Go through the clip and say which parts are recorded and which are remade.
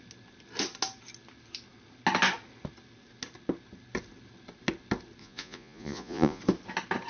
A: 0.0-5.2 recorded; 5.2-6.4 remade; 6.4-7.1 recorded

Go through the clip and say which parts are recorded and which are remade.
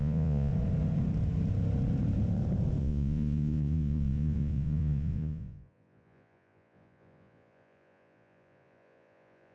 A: 0.0-0.5 remade; 0.5-2.8 recorded; 2.8-9.5 remade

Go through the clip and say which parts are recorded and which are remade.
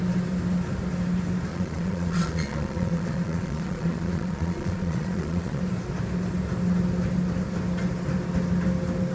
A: 0.0-1.5 recorded; 1.5-5.6 remade; 5.6-9.1 recorded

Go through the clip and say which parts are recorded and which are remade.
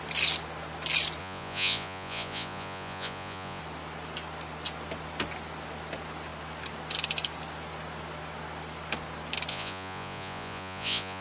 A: 0.0-1.2 recorded; 1.2-3.6 remade; 3.6-9.5 recorded; 9.5-11.2 remade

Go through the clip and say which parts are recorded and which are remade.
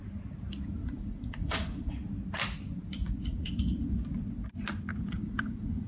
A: 0.0-0.8 recorded; 0.8-1.9 remade; 1.9-3.0 recorded; 3.0-3.5 remade; 3.5-4.9 recorded; 4.9-5.9 remade